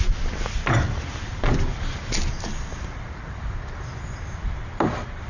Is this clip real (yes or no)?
yes